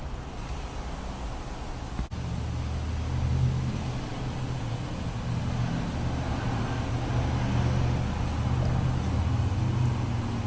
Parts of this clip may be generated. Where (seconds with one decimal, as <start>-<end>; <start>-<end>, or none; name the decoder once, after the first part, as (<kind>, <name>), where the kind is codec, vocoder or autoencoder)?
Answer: none